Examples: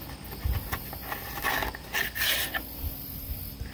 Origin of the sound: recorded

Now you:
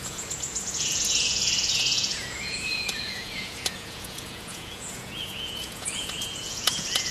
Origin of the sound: remade